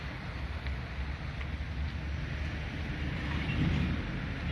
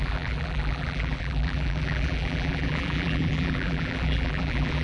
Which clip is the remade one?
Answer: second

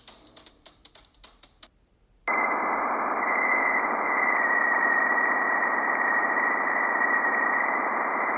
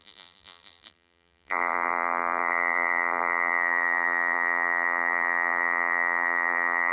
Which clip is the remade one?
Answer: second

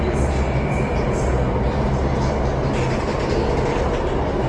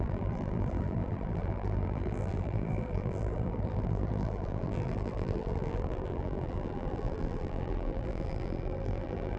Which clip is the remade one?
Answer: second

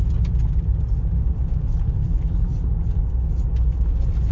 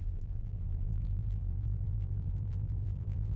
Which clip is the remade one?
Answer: second